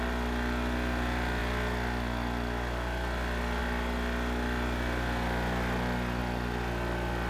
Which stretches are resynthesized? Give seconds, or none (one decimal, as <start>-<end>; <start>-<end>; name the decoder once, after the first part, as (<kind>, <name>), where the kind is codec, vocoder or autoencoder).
none